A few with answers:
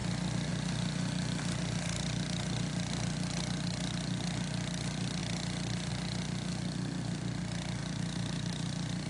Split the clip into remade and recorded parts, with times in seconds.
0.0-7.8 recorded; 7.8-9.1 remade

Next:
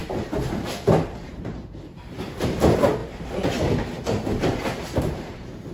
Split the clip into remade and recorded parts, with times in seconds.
0.0-1.3 recorded; 1.3-3.0 remade; 3.0-5.0 recorded; 5.0-5.7 remade

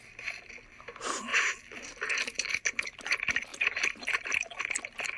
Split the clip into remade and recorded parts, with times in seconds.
0.0-1.3 recorded; 1.3-2.5 remade; 2.5-3.5 recorded; 3.5-4.3 remade; 4.3-5.2 recorded

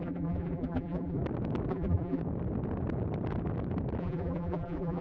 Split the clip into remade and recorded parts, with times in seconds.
0.0-1.2 remade; 1.2-1.7 recorded; 1.7-2.2 remade; 2.2-4.0 recorded; 4.0-5.0 remade

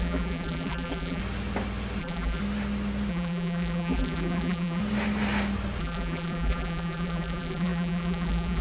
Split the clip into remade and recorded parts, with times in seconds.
0.0-1.2 remade; 1.2-2.0 recorded; 2.0-2.4 remade; 2.4-3.1 recorded; 3.1-4.8 remade; 4.8-5.8 recorded; 5.8-8.6 remade